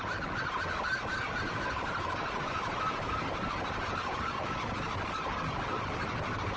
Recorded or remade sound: remade